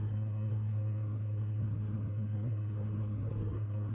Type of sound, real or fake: fake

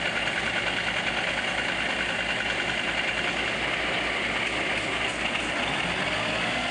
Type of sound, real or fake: real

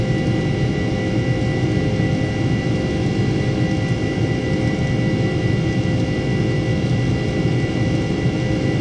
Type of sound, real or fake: real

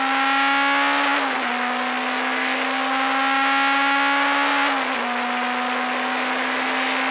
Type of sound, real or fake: real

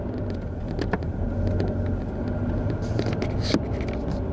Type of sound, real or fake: real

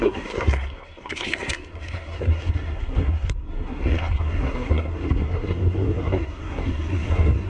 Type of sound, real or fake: fake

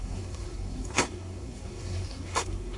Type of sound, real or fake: fake